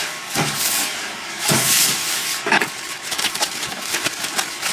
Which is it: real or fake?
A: fake